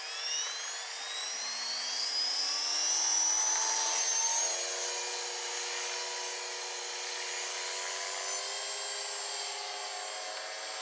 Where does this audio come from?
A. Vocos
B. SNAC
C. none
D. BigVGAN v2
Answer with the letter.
C